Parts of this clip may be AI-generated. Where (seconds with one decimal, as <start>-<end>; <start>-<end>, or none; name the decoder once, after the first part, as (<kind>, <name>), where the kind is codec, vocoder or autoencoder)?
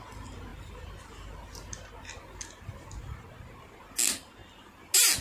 none